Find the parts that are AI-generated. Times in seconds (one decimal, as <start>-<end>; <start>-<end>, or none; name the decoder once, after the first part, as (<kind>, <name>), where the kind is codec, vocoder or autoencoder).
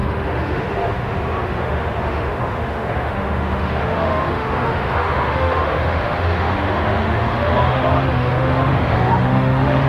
0.0-9.9 (autoencoder, DAC-VAE)